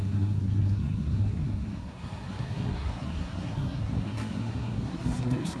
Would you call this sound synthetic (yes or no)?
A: yes